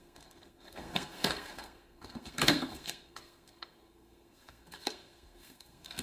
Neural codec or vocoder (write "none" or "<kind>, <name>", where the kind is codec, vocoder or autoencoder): codec, SNAC